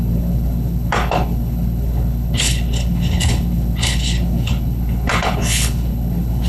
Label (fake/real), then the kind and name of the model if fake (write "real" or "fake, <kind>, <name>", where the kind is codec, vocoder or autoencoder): fake, codec, HILCodec